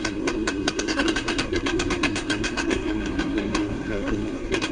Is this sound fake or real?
fake